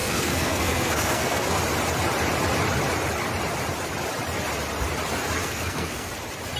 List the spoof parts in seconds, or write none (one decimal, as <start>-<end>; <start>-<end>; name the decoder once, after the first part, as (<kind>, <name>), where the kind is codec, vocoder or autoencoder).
0.0-1.6 (codec, SNAC); 5.4-6.1